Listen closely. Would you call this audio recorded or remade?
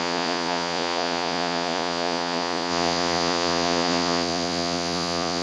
remade